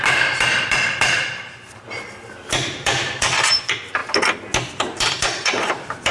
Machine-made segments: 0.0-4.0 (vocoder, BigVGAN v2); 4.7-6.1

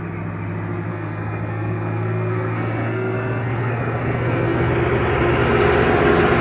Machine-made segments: 0.9-4.7 (codec, SNAC)

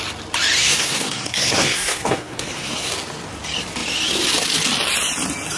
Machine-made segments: 0.6-2.9 (codec, SNAC)

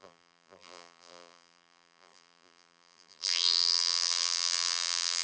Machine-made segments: 0.0-5.2 (vocoder, BigVGAN v2)

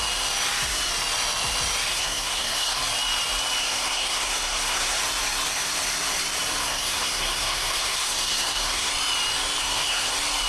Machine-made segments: 1.9-2.8 (codec, SNAC); 3.6-5.0; 6.6-8.9; 9.6-10.1

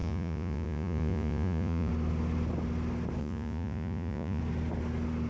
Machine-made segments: 0.0-1.9 (vocoder, Vocos); 3.2-4.4

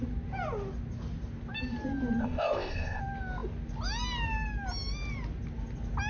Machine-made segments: 2.2-3.0 (codec, ZipCodec)